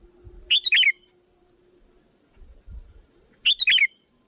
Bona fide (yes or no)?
yes